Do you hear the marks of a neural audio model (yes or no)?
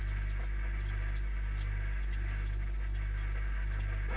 no